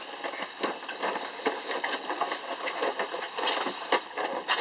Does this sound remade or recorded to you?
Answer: recorded